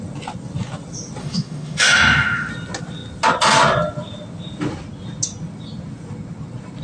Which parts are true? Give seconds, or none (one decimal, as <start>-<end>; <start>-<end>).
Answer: 0.0-1.2; 2.5-6.8